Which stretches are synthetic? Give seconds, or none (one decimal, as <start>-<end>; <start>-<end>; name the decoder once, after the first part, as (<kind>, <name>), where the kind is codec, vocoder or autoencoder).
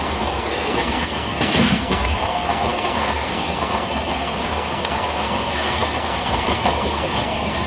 0.0-7.7 (codec, SNAC)